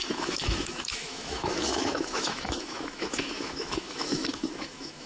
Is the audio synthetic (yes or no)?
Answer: yes